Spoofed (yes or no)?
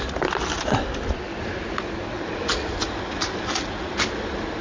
no